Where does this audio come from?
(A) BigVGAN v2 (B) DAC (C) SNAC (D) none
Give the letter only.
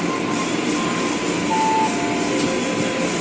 D